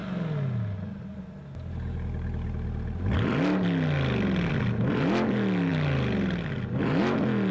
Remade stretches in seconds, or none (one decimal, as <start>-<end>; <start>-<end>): none